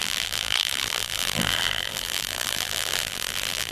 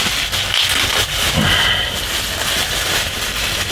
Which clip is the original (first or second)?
second